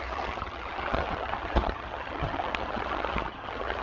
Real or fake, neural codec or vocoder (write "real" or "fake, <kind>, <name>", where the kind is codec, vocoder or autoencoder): fake, vocoder, HiFi-GAN